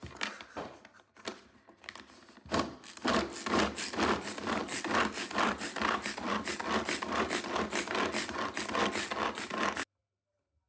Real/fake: real